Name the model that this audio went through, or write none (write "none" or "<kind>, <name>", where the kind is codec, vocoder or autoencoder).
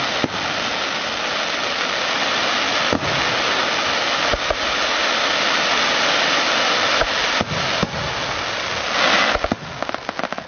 none